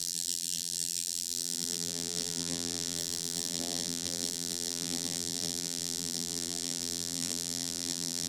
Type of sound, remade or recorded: remade